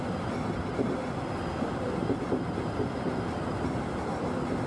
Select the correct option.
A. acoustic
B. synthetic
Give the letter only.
A